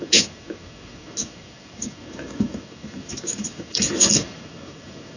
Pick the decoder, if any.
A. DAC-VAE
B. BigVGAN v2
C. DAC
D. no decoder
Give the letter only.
A